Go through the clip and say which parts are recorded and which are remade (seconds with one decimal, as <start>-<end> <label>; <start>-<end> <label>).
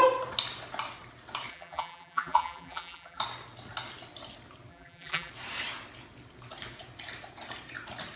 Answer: 0.0-1.5 recorded; 1.5-3.2 remade; 3.2-4.7 recorded; 4.7-5.3 remade; 5.3-8.2 recorded